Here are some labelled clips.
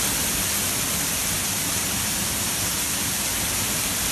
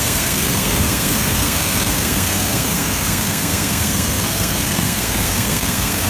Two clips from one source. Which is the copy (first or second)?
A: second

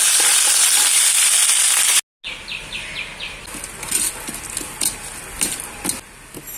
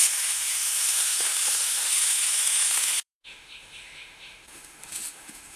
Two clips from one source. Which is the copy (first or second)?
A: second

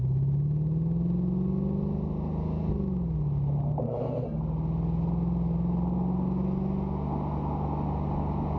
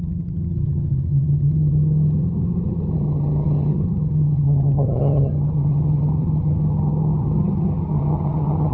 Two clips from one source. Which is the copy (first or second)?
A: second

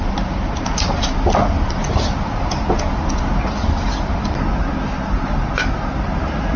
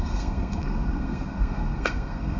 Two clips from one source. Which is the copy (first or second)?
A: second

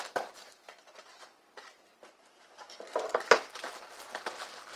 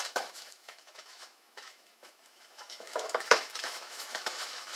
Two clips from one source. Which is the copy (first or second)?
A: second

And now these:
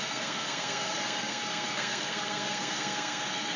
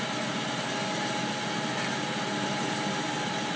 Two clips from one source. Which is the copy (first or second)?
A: first